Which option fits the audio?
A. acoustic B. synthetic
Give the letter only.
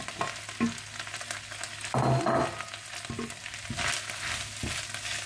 A